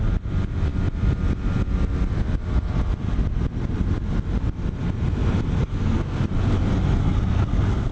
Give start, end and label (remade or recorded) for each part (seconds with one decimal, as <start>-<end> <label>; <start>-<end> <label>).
0.0-5.6 recorded; 5.6-6.2 remade; 6.2-7.0 recorded; 7.0-7.9 remade